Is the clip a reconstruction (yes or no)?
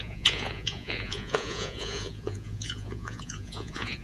yes